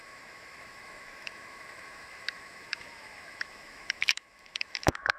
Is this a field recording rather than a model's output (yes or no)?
no